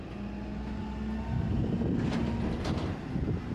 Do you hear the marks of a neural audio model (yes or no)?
no